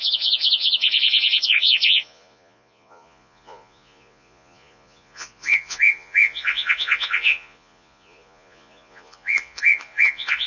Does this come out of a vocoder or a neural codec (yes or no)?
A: yes